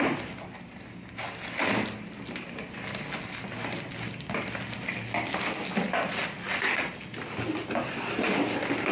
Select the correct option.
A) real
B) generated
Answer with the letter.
A